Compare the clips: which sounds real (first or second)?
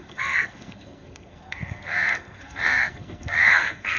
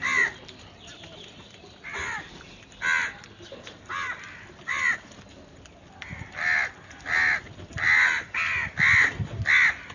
second